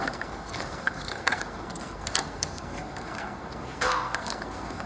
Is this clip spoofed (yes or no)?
yes